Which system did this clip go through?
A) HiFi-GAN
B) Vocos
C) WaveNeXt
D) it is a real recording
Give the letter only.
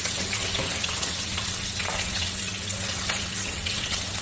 C